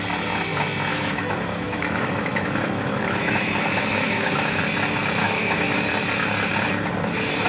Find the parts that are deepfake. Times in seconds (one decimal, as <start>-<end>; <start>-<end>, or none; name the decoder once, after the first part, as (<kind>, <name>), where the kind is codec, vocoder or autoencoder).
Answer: 0.9-4.6 (autoencoder, DAC-VAE); 5.2-5.8

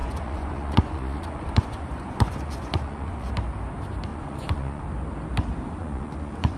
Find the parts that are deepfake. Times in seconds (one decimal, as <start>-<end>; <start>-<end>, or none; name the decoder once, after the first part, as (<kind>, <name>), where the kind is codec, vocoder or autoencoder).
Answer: 0.0-3.3 (vocoder, Vocos); 4.1-4.8; 5.8-6.6

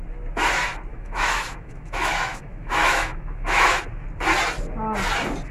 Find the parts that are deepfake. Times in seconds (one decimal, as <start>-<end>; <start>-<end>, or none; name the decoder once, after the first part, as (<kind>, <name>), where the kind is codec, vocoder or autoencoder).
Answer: 0.9-3.8 (autoencoder, DAC-VAE)